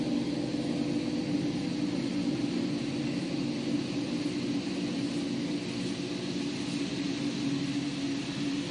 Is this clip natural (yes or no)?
yes